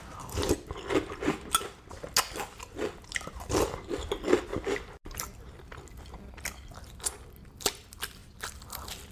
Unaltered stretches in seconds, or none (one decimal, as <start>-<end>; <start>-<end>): 0.0-9.1